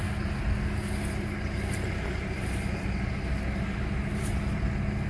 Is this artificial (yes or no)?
no